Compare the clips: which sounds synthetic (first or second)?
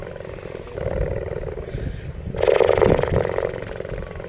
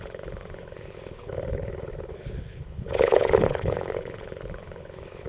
second